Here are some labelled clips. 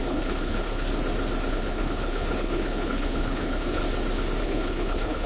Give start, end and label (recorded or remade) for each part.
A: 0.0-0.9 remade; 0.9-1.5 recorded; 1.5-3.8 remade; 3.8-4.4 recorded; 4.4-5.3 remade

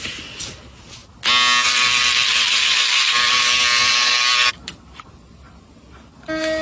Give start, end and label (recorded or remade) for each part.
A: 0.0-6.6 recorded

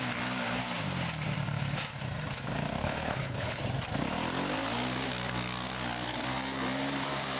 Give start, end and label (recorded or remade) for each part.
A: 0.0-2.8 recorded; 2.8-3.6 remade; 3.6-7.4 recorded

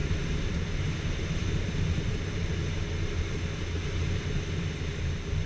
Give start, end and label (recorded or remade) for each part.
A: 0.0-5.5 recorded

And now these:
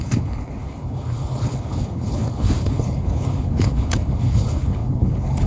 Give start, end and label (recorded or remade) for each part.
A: 0.0-5.5 remade